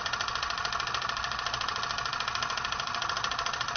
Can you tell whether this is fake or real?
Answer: real